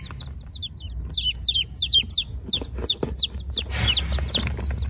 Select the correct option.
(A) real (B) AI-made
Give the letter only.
A